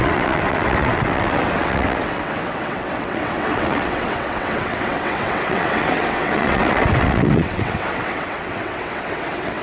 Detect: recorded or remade remade